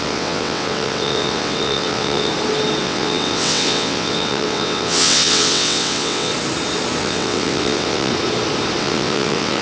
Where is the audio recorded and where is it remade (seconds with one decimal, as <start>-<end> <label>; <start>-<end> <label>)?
0.0-2.3 remade; 2.3-2.8 recorded; 2.8-6.3 remade; 6.3-7.0 recorded; 7.0-8.1 remade; 8.1-8.8 recorded; 8.8-9.6 remade

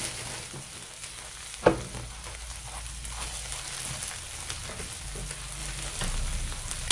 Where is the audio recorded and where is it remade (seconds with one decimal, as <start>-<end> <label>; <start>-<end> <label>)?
0.0-6.9 recorded

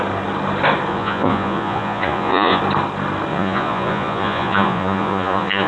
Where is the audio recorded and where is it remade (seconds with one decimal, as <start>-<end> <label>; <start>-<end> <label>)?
0.0-0.9 recorded; 0.9-2.6 remade; 2.6-3.3 recorded; 3.3-5.7 remade

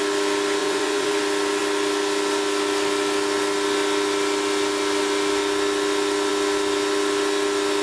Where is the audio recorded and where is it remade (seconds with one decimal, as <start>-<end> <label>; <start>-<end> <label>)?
0.0-0.6 recorded; 0.6-1.2 remade; 1.2-7.8 recorded